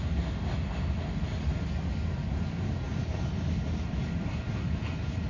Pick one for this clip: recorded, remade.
recorded